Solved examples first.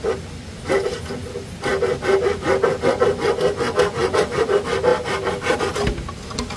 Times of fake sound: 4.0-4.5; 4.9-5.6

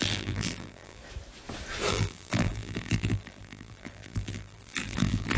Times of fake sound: 0.0-1.0; 1.9-5.4

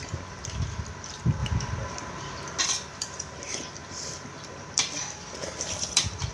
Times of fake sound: 0.0-1.4; 2.6-6.3

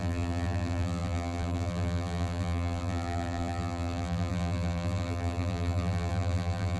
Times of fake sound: 0.0-6.8

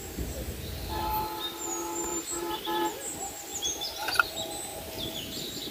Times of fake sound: 2.1-2.9; 3.5-4.2; 4.7-5.7